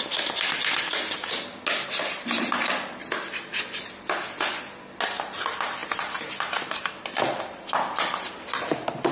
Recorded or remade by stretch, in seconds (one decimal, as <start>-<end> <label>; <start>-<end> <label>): 0.0-3.0 recorded; 3.0-3.6 remade; 3.6-5.8 recorded; 5.8-8.6 remade; 8.6-9.1 recorded